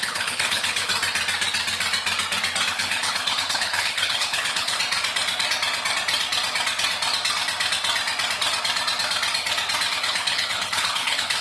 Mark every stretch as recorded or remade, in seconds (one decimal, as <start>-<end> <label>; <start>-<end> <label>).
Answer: 0.0-0.9 remade; 0.9-2.7 recorded; 2.7-4.8 remade; 4.8-10.0 recorded; 10.0-11.4 remade